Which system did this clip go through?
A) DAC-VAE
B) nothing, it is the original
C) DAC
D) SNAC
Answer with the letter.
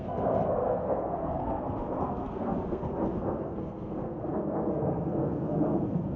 D